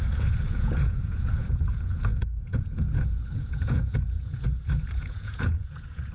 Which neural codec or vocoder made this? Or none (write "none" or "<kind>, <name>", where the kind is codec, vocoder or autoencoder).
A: vocoder, Vocos